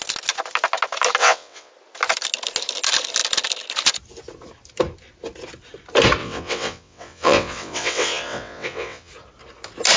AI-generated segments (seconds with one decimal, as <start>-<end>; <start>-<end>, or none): 1.2-1.7; 6.2-9.1